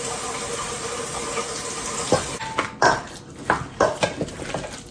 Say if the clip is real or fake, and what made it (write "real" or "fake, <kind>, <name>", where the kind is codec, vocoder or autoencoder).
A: real